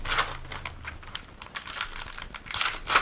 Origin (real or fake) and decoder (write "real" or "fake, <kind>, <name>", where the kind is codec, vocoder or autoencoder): real